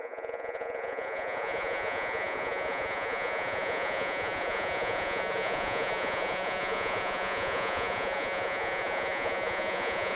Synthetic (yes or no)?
yes